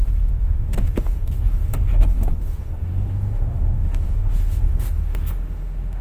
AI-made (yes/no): yes